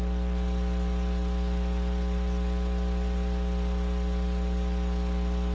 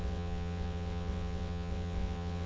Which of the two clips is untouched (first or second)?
first